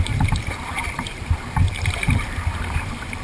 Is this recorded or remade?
remade